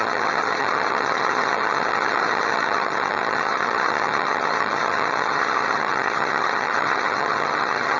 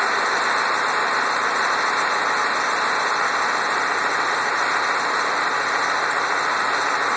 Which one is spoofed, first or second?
first